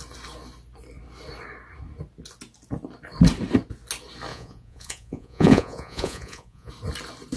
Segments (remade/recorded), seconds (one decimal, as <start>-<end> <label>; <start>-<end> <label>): 0.0-4.3 recorded; 4.3-6.7 remade; 6.7-7.4 recorded